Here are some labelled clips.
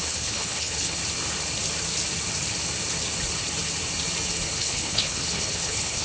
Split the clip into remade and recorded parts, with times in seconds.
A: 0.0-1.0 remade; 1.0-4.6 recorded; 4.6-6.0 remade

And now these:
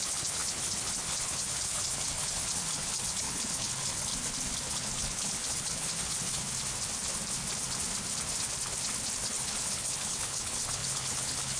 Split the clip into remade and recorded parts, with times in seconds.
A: 0.0-4.1 remade; 4.1-4.7 recorded; 4.7-6.4 remade; 6.4-9.2 recorded; 9.2-11.6 remade